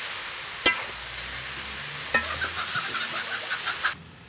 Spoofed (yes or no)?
no